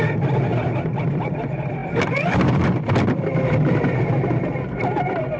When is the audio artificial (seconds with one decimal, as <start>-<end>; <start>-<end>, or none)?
none

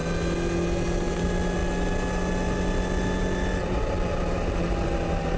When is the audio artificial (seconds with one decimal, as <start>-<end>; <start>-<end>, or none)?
none

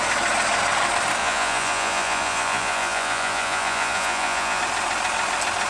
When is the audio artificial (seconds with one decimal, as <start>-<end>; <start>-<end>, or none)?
1.2-4.6

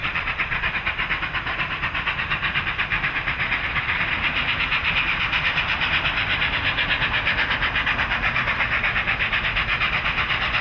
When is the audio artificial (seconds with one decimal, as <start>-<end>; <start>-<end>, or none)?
0.0-0.7

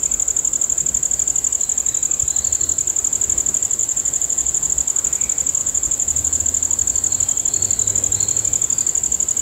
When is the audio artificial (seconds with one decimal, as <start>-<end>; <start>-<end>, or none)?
3.8-4.7; 5.6-6.4

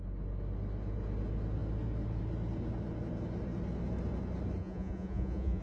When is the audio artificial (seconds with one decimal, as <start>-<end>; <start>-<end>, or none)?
4.6-5.6

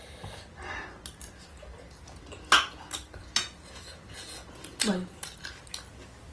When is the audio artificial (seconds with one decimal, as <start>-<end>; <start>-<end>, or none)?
3.2-4.9